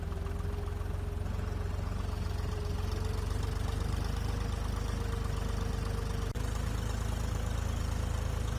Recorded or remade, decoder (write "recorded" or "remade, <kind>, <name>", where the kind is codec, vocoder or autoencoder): recorded